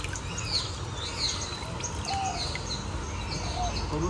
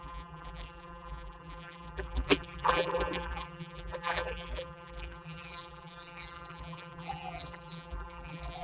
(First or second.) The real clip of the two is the first